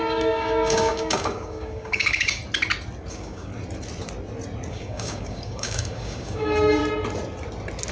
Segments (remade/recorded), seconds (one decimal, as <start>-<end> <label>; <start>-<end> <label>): 0.0-2.4 remade; 2.4-3.1 recorded; 3.1-3.5 remade; 3.5-4.7 recorded; 4.7-6.8 remade; 6.8-7.9 recorded